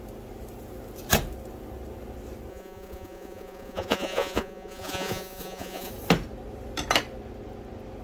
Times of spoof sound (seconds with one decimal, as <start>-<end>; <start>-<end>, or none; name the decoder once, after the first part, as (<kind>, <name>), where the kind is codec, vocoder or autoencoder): 2.5-5.9 (vocoder, Vocos)